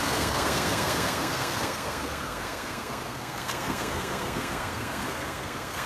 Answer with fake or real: fake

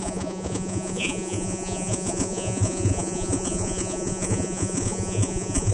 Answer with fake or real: fake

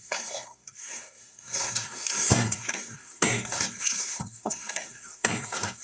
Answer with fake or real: fake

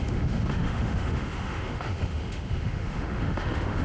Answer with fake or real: fake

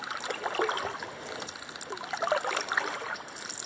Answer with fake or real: real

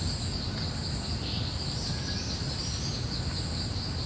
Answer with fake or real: real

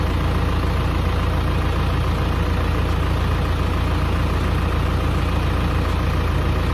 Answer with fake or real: real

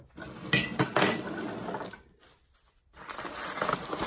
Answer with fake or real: real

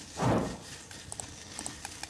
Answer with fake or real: real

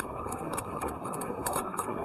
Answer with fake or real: fake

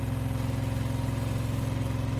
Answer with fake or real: real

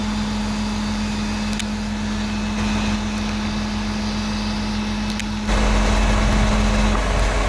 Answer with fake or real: real